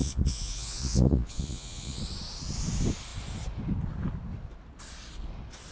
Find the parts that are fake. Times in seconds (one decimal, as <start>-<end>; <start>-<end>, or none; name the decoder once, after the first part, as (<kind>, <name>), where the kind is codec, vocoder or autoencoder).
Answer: 0.0-2.0 (vocoder, Vocos)